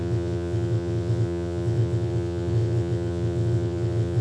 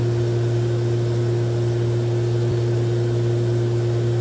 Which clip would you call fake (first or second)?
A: first